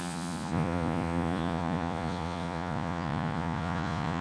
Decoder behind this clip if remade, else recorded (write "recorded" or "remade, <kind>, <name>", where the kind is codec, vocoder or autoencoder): remade, vocoder, Vocos